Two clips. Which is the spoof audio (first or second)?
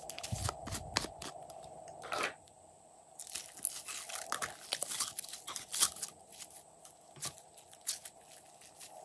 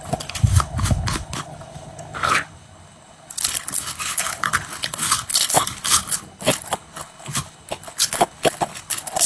second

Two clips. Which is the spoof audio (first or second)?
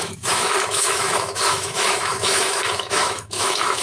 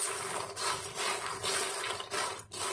first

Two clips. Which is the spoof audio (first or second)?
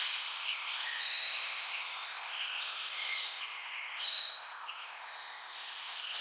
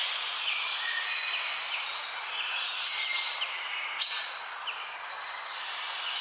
first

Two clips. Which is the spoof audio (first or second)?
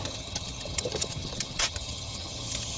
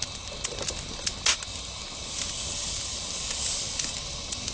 first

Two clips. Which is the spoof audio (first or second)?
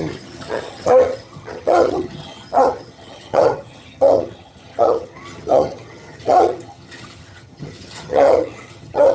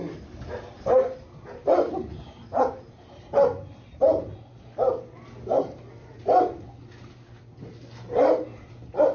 first